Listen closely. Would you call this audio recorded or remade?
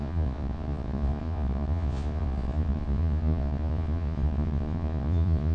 remade